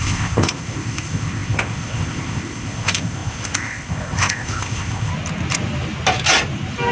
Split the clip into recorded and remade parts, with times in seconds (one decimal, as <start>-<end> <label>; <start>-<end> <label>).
0.0-5.1 remade; 5.1-6.9 recorded